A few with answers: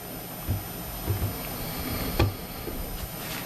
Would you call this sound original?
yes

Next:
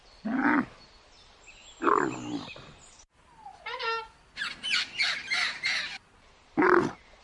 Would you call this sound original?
yes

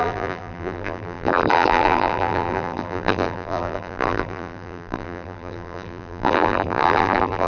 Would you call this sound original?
no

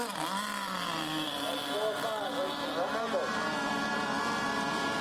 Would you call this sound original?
yes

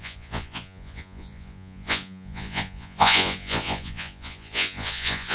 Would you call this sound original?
no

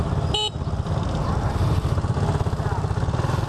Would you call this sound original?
yes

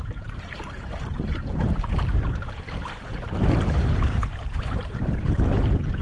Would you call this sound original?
no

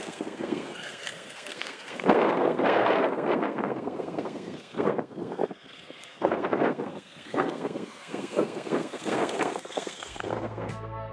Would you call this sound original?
no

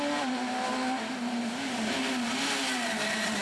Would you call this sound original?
yes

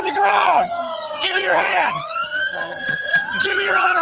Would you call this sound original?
no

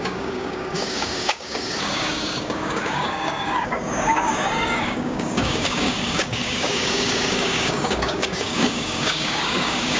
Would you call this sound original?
no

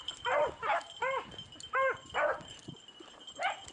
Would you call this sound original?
yes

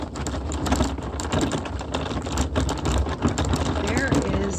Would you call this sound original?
yes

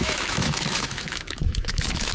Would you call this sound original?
no